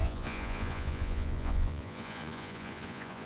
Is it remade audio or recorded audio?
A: remade